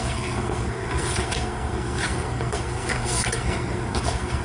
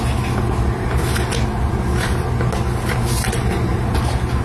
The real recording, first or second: second